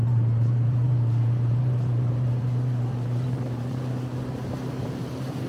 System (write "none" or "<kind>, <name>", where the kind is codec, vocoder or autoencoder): vocoder, BigVGAN v2